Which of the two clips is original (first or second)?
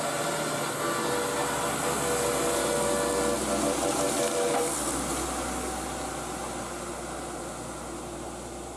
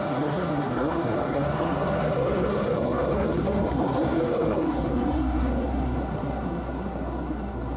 first